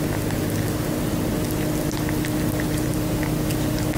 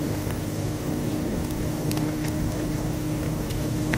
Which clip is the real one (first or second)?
first